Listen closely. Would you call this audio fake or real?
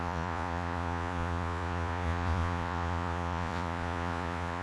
fake